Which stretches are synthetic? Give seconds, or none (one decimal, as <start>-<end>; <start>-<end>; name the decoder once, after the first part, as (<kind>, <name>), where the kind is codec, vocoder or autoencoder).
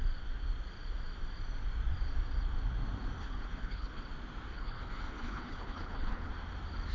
3.2-4.0 (codec, HILCodec); 4.5-6.3